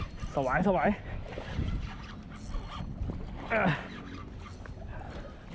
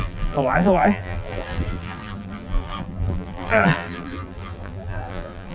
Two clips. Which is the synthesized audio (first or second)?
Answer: second